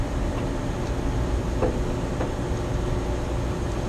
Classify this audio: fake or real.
real